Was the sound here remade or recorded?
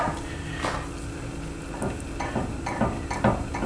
recorded